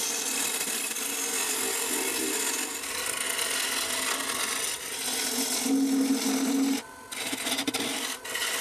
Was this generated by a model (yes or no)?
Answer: no